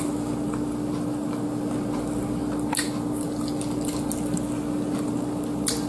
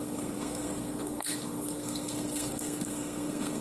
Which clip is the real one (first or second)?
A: first